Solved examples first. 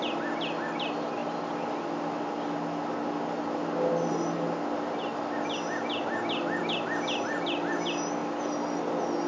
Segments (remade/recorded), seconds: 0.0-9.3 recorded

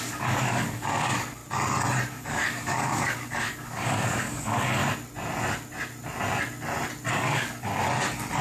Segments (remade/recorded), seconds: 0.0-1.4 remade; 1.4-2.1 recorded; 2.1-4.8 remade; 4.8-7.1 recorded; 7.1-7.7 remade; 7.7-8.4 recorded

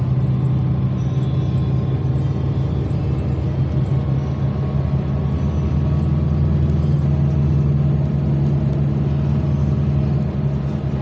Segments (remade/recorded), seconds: 0.0-11.0 recorded

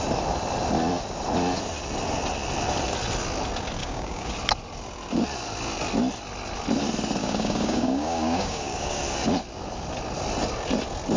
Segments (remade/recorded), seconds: 0.0-3.8 recorded; 3.8-4.3 remade; 4.3-7.2 recorded; 7.2-9.0 remade; 9.0-11.2 recorded